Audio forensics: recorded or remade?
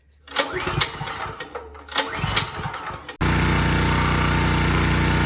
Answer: recorded